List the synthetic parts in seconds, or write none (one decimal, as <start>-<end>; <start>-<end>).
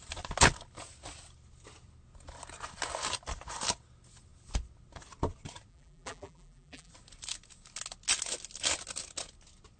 5.7-6.9